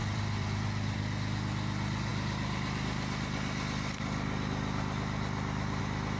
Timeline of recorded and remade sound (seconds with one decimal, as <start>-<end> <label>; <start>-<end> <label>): 0.0-1.0 remade; 1.0-6.2 recorded